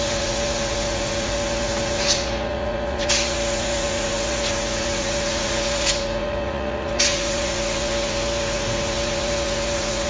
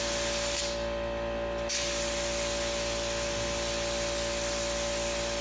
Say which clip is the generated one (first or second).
first